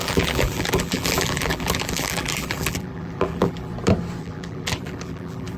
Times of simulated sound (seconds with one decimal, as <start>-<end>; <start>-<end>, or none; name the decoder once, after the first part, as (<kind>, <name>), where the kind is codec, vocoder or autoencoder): 0.0-3.7 (vocoder, BigVGAN v2); 4.2-5.6